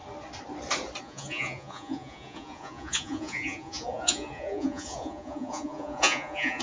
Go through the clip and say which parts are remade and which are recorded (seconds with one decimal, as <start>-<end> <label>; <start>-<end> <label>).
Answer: 0.0-1.0 recorded; 1.0-6.6 remade